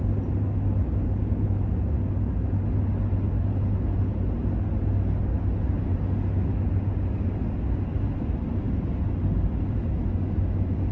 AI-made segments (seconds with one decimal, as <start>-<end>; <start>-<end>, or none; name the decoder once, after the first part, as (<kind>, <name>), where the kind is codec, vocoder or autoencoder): none